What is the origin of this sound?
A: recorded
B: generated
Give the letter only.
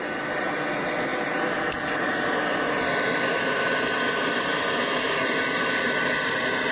A